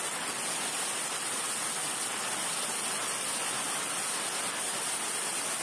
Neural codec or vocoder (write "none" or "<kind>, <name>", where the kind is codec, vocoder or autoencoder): none